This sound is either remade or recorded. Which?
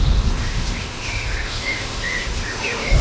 remade